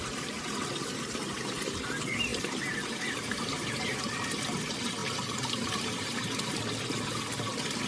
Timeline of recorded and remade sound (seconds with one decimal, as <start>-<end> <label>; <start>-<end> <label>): 0.0-2.3 recorded; 2.3-4.3 remade; 4.3-5.0 recorded; 5.0-6.6 remade; 6.6-7.9 recorded